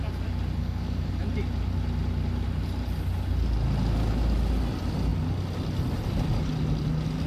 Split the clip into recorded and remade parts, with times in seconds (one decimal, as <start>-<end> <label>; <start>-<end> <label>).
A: 0.0-0.6 recorded; 0.6-1.1 remade; 1.1-7.3 recorded